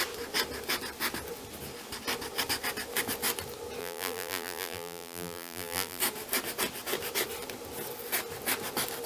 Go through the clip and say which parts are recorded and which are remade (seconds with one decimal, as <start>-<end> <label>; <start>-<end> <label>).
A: 0.0-3.8 recorded; 3.8-6.0 remade; 6.0-9.1 recorded